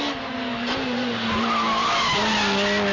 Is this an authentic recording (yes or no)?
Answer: yes